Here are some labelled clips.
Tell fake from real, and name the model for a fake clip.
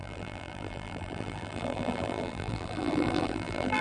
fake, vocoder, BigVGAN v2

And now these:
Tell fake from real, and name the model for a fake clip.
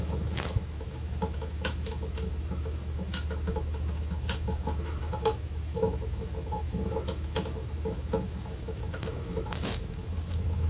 fake, autoencoder, DAC-VAE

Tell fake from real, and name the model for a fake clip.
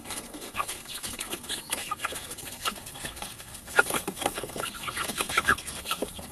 fake, codec, SNAC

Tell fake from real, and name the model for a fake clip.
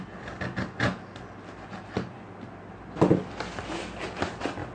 real